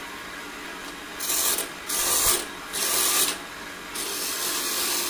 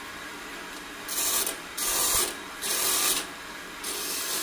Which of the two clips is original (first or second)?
first